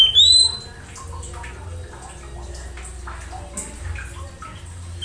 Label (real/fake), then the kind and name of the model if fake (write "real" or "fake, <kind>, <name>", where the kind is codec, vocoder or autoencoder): real